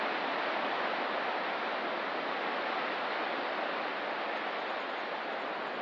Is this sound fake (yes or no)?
no